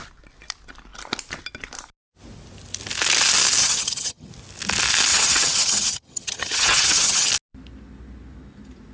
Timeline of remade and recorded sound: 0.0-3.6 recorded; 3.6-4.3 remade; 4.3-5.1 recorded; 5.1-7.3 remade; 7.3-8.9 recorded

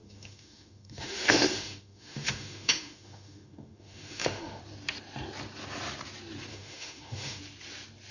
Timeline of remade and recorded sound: 0.0-4.6 remade; 4.6-6.5 recorded; 6.5-7.4 remade; 7.4-8.1 recorded

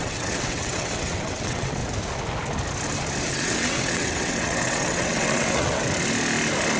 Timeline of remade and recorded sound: 0.0-1.8 remade; 1.8-3.3 recorded; 3.3-5.8 remade; 5.8-6.8 recorded